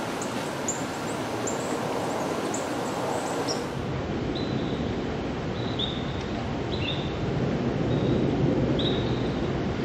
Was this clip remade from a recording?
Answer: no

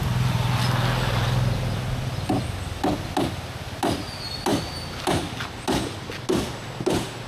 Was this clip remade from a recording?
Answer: no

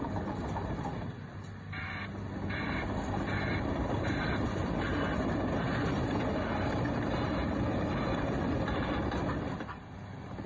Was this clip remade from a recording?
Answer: no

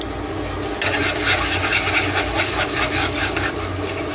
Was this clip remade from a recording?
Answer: no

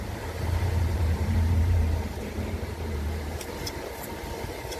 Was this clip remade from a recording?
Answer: yes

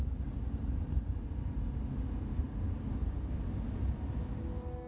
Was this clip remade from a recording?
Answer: no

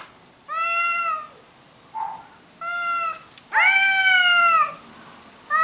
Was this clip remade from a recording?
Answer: no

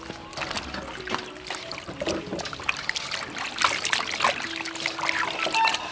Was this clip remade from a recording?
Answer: no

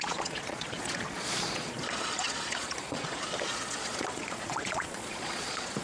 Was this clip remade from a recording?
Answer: yes